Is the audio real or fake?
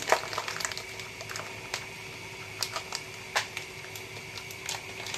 real